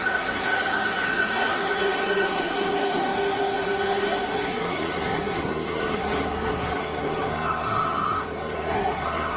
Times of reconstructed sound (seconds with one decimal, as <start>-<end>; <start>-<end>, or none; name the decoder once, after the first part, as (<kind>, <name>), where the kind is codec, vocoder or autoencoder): 0.0-9.4 (codec, SNAC)